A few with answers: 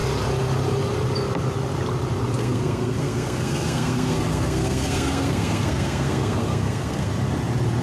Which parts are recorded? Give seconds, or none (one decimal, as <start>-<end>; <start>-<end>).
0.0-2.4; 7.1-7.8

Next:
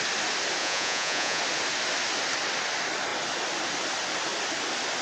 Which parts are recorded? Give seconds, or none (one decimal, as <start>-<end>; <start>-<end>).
0.0-0.6; 1.4-5.0

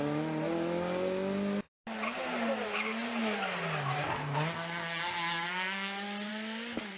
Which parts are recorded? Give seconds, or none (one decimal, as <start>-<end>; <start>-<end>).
0.0-7.0

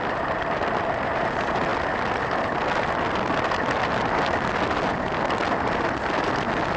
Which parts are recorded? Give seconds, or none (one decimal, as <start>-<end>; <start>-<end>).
0.0-6.8